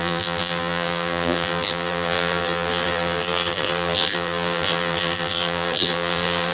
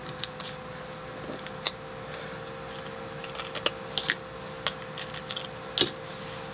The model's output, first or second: first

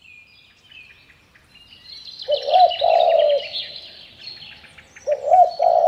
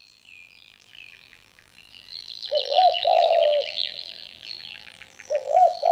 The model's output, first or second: second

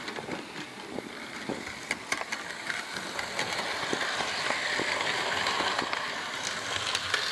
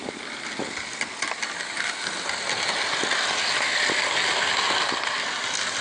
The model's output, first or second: first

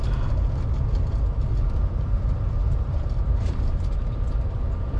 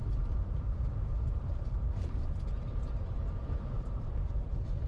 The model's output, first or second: second